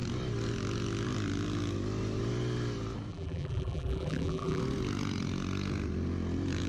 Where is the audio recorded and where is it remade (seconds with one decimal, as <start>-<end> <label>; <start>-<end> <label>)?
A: 0.0-3.1 recorded; 3.1-4.6 remade; 4.6-6.7 recorded